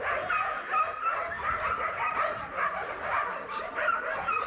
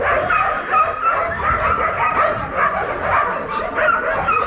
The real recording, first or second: second